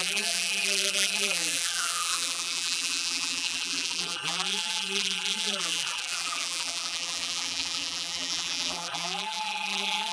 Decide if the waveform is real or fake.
fake